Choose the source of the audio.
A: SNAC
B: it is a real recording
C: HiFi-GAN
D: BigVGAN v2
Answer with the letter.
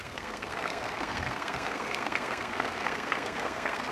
A